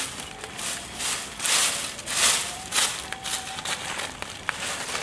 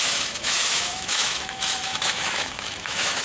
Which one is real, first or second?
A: first